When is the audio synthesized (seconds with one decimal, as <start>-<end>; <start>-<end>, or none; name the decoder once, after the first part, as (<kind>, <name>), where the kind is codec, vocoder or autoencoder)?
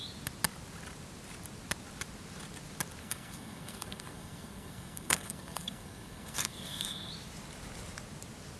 3.0-7.1 (codec, SNAC)